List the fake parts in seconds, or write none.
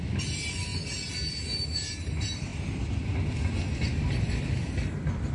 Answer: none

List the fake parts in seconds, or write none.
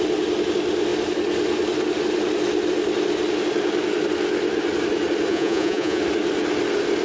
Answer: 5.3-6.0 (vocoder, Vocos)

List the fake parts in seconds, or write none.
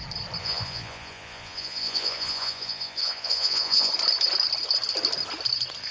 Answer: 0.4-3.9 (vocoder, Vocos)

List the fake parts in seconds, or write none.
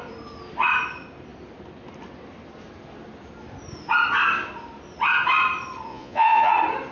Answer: 5.9-6.5 (vocoder, Vocos)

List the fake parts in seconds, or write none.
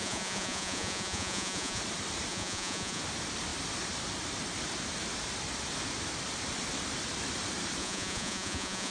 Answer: 0.0-1.8 (vocoder, Vocos); 2.3-3.0; 7.8-8.9